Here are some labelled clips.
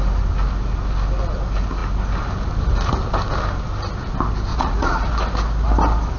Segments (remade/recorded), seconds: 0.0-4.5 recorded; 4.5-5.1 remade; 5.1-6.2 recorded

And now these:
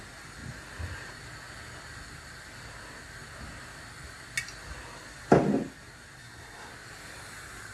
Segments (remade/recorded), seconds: 0.0-6.2 recorded; 6.2-6.7 remade; 6.7-7.7 recorded

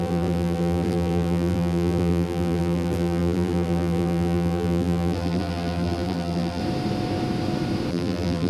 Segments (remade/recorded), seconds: 0.0-6.6 remade; 6.6-7.9 recorded; 7.9-8.5 remade

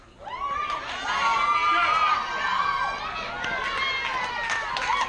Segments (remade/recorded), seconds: 0.0-5.1 recorded

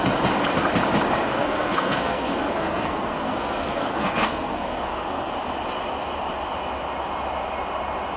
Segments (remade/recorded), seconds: 0.0-1.3 recorded; 1.3-5.3 remade; 5.3-8.2 recorded